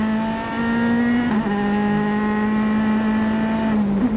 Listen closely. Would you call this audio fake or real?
real